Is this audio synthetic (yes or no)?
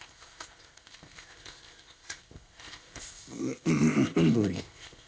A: yes